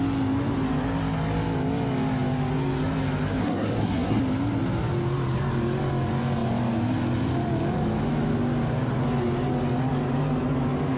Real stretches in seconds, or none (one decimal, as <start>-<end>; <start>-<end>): 0.0-3.4; 4.2-11.0